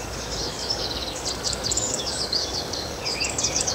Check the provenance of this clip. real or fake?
fake